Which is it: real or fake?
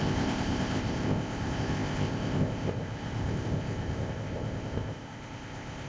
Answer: fake